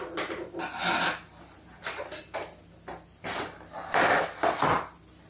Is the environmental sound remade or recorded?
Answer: recorded